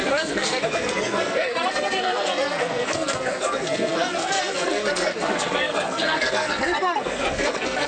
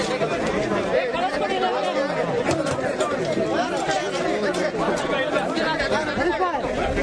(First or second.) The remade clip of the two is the first